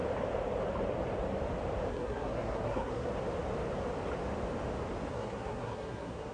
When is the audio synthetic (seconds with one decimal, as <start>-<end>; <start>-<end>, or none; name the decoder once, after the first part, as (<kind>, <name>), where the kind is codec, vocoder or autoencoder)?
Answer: 1.9-3.1 (codec, SNAC); 5.1-6.3